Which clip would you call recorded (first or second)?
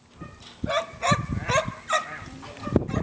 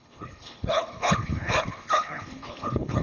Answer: first